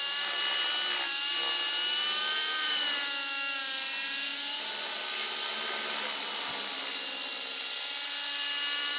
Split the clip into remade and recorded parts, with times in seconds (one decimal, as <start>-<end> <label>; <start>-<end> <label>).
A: 0.0-9.0 recorded